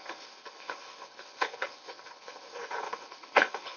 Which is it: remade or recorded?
remade